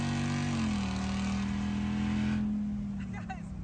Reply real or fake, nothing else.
real